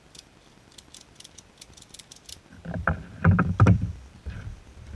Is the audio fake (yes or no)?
yes